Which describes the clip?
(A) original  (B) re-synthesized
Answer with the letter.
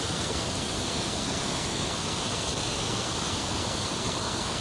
B